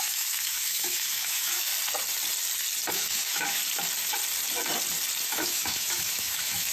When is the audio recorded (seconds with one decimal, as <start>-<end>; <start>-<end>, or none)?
1.7-2.9; 3.6-5.3

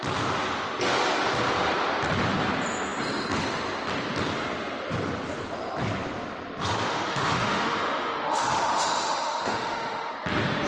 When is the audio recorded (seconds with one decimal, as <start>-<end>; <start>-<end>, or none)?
0.0-6.9; 10.1-10.7

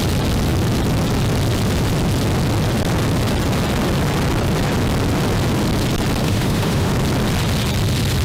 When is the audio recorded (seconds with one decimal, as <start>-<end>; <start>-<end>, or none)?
0.0-6.2; 6.9-8.2